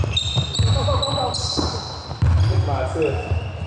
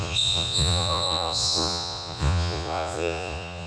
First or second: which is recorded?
first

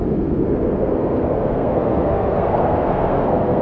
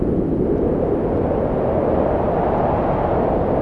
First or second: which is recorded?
second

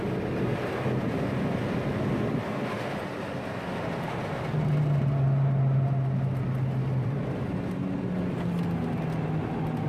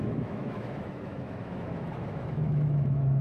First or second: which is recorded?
first